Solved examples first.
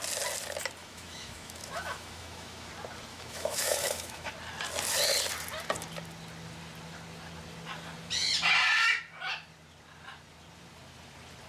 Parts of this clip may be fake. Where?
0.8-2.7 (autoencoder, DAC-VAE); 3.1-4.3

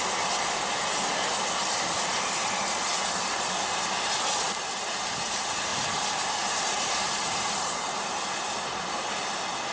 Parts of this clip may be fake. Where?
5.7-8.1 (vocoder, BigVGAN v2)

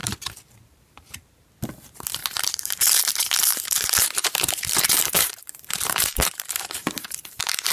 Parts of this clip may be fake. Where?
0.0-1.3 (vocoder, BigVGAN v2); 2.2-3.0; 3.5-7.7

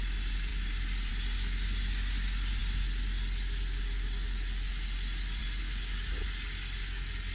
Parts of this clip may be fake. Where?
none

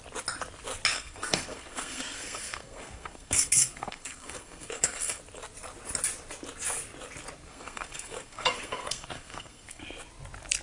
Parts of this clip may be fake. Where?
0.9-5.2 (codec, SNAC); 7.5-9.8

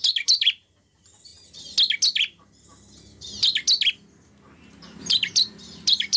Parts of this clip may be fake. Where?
0.0-1.3 (vocoder, BigVGAN v2); 5.0-6.2

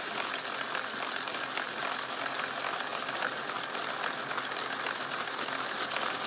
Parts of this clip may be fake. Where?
none

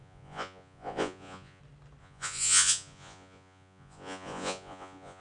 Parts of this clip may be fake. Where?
0.0-1.6 (vocoder, Vocos); 2.0-5.2